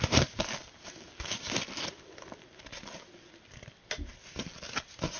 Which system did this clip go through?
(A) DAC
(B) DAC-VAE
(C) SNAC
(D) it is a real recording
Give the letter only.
D